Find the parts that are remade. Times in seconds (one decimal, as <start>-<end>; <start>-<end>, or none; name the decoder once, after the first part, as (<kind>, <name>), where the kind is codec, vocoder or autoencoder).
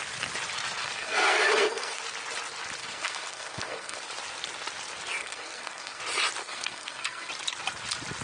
0.8-2.0 (codec, SNAC); 2.8-4.0; 5.2-6.0; 6.4-7.3